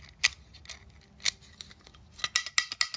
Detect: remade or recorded recorded